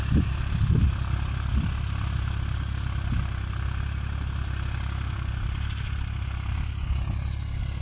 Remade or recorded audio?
recorded